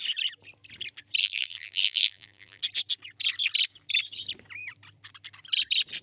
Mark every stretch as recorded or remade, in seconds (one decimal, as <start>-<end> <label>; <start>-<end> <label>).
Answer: 0.0-1.2 recorded; 1.2-2.6 remade; 2.6-6.0 recorded